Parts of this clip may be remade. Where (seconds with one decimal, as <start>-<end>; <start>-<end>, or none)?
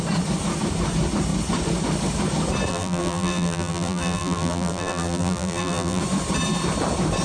2.7-6.0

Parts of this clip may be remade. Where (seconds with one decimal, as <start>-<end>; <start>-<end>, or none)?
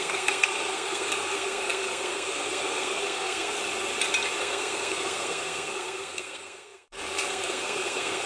0.0-3.6; 4.4-8.3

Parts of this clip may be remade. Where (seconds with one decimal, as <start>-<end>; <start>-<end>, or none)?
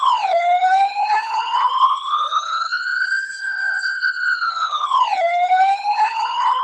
0.0-6.6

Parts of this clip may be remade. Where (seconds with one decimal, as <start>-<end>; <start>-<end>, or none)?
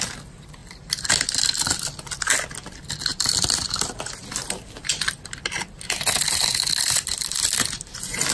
0.6-2.2; 3.1-4.2; 4.9-7.8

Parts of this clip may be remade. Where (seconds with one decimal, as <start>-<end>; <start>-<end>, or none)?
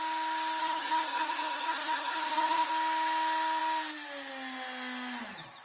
0.6-2.7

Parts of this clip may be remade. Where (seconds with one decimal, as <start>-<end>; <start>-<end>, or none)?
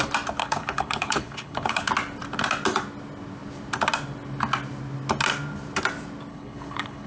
0.4-1.9; 6.3-7.1